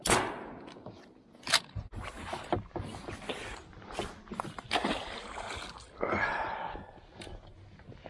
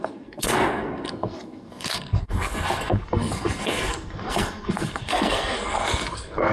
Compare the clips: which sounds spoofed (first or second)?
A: second